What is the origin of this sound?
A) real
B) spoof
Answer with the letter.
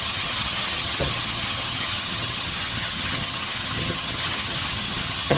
B